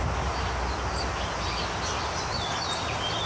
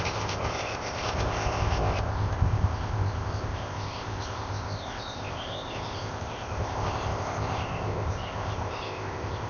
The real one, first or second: first